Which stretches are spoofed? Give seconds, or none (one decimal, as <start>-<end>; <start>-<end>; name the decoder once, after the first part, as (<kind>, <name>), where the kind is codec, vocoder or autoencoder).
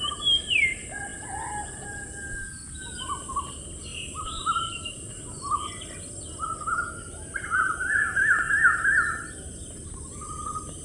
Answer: 1.1-2.8 (vocoder, BigVGAN v2); 3.9-6.6